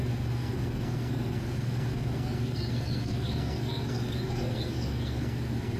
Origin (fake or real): fake